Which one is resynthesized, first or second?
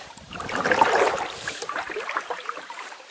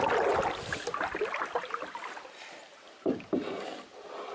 first